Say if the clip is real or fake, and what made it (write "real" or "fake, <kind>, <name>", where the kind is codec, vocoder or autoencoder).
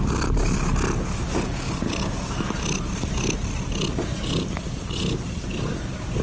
real